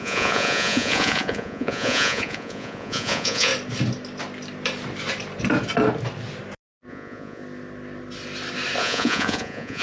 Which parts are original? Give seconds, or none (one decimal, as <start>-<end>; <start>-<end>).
3.5-6.9; 7.4-8.8